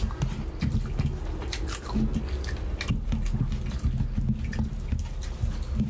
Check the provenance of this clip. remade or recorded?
recorded